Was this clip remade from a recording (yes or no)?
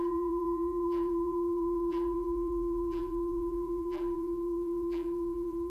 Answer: yes